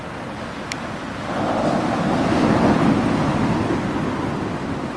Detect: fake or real real